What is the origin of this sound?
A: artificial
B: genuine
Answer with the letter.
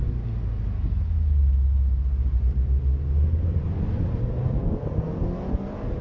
B